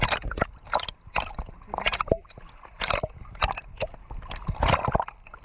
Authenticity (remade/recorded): recorded